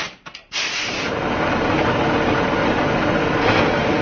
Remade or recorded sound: remade